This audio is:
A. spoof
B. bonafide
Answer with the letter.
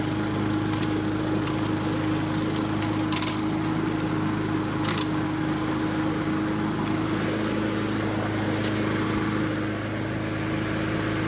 B